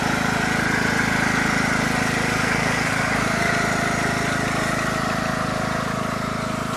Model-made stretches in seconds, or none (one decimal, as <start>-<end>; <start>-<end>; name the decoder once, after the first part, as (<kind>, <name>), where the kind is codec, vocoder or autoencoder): 2.4-3.5 (codec, SNAC)